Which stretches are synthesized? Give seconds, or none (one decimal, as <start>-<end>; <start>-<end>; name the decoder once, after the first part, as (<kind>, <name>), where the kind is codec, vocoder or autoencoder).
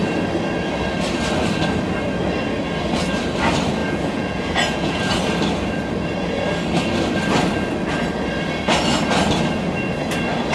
3.8-5.0 (vocoder, Vocos)